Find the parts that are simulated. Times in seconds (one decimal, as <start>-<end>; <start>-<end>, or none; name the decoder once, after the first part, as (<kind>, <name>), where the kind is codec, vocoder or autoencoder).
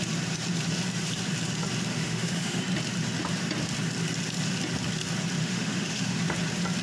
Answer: 1.9-2.6 (autoencoder, DAC-VAE); 5.4-6.2